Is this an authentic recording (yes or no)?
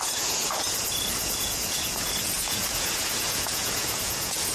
no